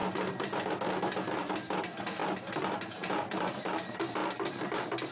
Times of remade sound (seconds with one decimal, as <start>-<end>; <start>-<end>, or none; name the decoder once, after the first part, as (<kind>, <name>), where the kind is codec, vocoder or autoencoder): none